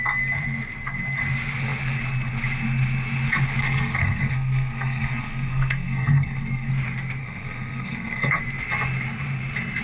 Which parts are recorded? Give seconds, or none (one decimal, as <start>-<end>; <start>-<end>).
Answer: 0.0-3.6; 6.7-7.2; 8.4-9.8